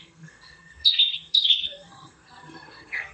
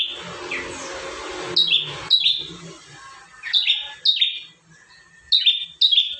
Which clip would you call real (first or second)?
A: second